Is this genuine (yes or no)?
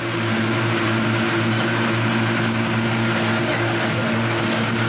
yes